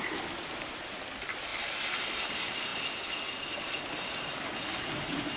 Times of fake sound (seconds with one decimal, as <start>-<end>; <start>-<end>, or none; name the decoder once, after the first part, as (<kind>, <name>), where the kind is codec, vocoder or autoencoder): none